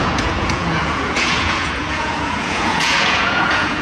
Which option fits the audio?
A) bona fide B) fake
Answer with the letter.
B